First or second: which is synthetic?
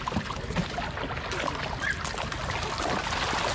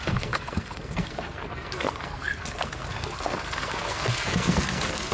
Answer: second